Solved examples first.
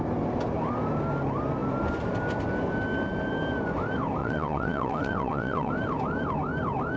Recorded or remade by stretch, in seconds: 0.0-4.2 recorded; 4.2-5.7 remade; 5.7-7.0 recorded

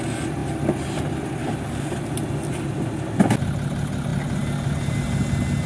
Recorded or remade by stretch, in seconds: 0.0-5.7 recorded

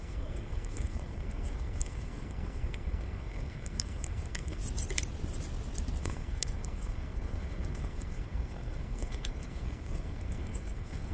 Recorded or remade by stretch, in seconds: 0.0-4.6 remade; 4.6-6.0 recorded; 6.0-11.1 remade

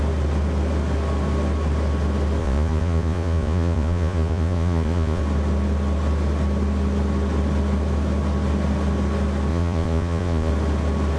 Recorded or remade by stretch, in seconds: 0.0-2.4 recorded; 2.4-5.2 remade; 5.2-9.5 recorded; 9.5-10.5 remade; 10.5-11.2 recorded

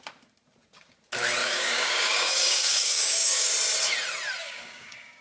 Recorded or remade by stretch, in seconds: 0.0-1.4 recorded; 1.4-3.5 remade; 3.5-4.4 recorded; 4.4-5.2 remade